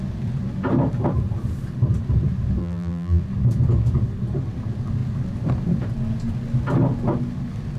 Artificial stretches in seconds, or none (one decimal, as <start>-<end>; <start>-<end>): 2.6-3.2